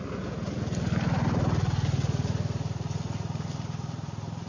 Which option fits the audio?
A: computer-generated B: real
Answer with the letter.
B